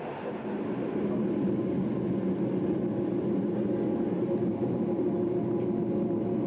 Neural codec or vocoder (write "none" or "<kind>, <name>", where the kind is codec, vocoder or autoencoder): none